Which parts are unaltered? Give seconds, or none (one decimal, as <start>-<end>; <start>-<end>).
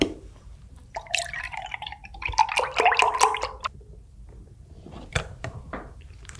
2.4-5.1